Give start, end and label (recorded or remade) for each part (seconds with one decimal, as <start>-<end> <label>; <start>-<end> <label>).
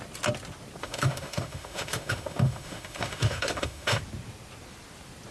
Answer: 0.0-0.8 recorded; 0.8-4.0 remade; 4.0-5.3 recorded